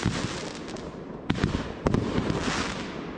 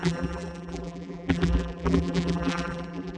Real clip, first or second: first